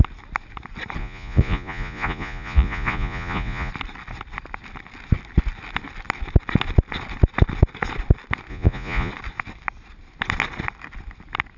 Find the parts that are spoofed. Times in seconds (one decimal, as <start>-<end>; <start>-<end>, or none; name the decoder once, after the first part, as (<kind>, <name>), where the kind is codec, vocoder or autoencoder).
1.0-3.7 (vocoder, Vocos); 8.5-9.1